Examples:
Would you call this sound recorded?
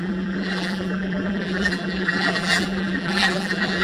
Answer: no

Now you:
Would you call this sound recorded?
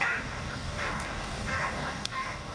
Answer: no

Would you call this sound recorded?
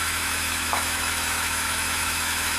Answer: no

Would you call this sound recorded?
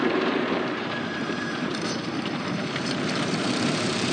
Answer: no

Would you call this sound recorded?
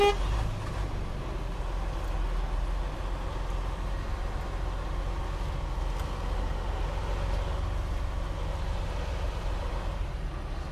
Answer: yes